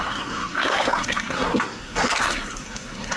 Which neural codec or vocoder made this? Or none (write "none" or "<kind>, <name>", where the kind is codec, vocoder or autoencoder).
codec, SNAC